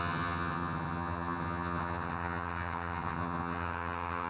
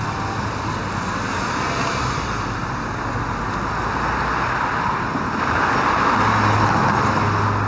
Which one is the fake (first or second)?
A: first